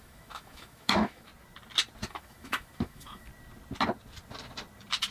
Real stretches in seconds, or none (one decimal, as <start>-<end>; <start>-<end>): 1.3-2.1; 3.3-5.1